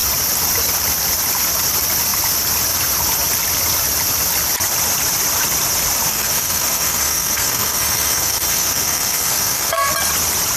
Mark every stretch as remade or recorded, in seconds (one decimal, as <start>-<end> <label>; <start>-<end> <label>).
0.0-6.1 recorded; 6.1-9.9 remade; 9.9-10.6 recorded